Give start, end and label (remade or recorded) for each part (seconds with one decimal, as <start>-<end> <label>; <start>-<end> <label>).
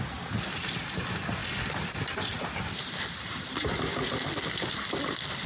0.0-5.5 recorded